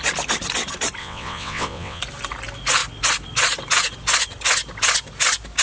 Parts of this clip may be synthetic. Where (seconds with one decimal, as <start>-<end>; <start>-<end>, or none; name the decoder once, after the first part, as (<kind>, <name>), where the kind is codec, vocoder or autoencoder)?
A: 1.0-2.0 (vocoder, WaveNeXt)